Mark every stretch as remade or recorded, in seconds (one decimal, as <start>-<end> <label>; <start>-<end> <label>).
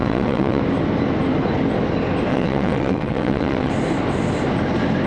0.0-0.6 remade; 0.6-2.3 recorded; 2.3-3.7 remade; 3.7-5.1 recorded